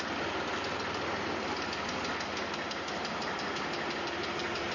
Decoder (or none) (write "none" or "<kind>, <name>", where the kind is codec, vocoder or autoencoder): none